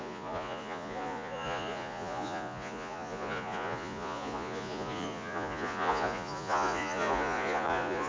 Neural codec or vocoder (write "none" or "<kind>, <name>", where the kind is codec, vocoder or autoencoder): vocoder, Vocos